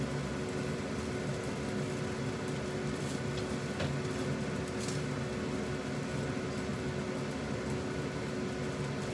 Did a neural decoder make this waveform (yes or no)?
no